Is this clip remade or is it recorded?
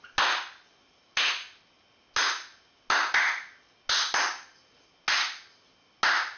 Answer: recorded